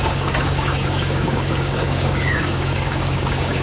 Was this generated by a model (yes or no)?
yes